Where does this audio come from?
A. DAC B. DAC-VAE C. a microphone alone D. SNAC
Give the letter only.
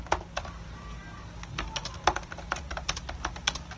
C